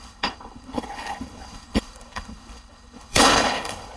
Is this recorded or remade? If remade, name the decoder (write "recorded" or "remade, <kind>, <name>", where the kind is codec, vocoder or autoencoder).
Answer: remade, codec, HILCodec